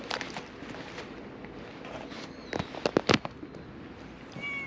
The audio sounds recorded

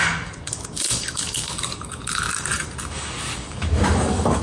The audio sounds remade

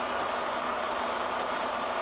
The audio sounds remade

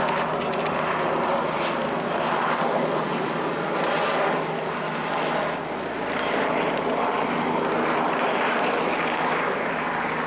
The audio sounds recorded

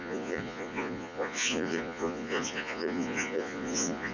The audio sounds remade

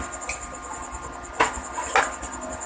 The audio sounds recorded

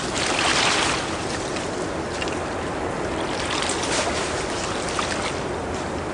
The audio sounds recorded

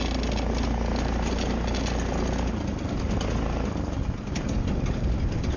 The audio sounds recorded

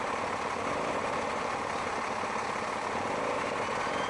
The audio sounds remade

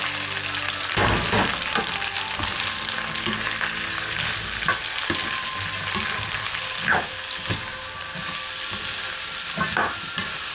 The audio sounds recorded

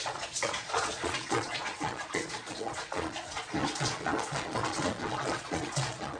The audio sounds remade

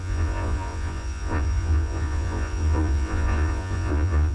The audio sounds remade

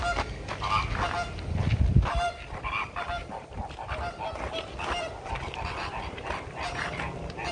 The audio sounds recorded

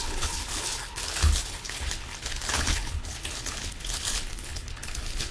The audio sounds remade